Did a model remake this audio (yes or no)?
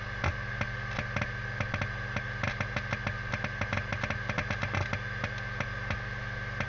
no